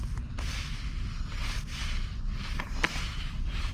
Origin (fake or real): real